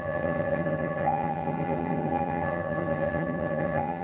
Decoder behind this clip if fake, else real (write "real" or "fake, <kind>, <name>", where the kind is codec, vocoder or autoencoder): fake, vocoder, HiFi-GAN